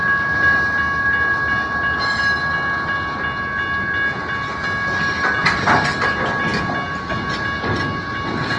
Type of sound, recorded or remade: recorded